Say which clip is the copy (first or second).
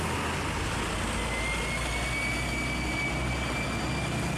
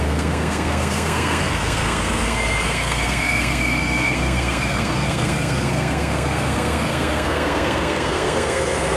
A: second